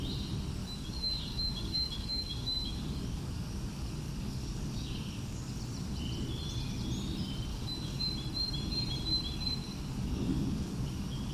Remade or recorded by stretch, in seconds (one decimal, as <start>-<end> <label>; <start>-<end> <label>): 0.0-0.6 recorded; 0.6-5.6 remade; 5.6-7.5 recorded; 7.5-8.0 remade; 8.0-9.6 recorded; 9.6-11.3 remade